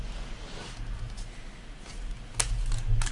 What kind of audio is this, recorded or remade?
recorded